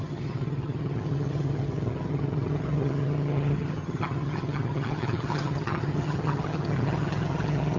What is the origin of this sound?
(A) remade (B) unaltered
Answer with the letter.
A